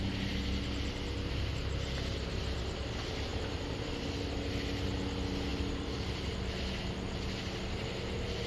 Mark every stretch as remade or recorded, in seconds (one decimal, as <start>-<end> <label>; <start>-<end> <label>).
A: 0.0-3.3 recorded; 3.3-3.9 remade; 3.9-5.5 recorded; 5.5-6.3 remade; 6.3-8.5 recorded